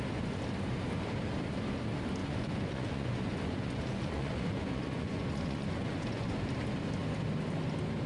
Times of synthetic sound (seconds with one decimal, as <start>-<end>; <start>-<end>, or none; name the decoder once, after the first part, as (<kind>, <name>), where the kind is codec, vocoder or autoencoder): 2.2-6.4 (vocoder, Vocos)